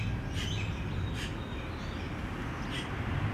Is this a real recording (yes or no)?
yes